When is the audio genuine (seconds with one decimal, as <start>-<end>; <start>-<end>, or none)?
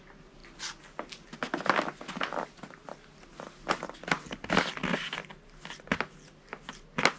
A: 0.0-7.2